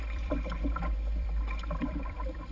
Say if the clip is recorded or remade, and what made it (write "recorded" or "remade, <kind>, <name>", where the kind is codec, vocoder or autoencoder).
remade, vocoder, BigVGAN v2